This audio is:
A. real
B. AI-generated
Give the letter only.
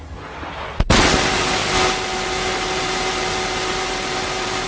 A